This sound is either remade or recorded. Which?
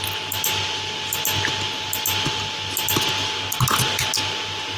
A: recorded